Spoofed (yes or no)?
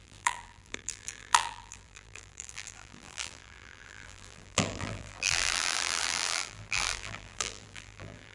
yes